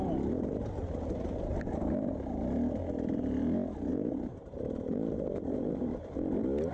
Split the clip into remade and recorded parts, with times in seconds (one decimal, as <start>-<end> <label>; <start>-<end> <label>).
0.0-3.9 recorded; 3.9-6.0 remade; 6.0-6.7 recorded